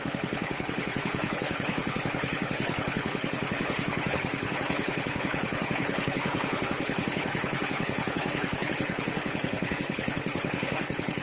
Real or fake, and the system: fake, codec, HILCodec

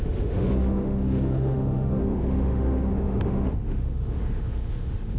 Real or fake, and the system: fake, autoencoder, DAC-VAE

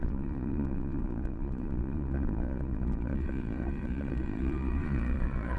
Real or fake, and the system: fake, vocoder, Vocos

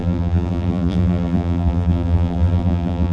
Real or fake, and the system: fake, vocoder, BigVGAN v2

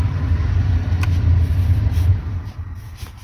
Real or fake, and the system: real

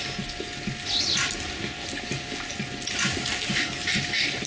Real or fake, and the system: real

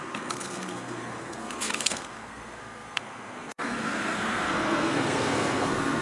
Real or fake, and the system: fake, codec, SNAC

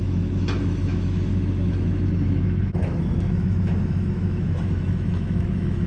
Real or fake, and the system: fake, autoencoder, DAC-VAE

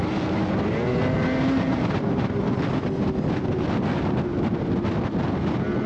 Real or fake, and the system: real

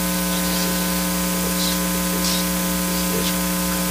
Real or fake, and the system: real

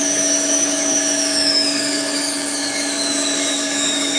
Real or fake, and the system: fake, codec, DAC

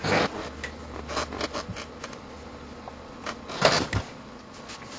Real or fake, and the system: real